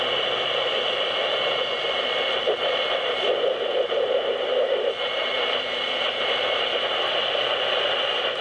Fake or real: fake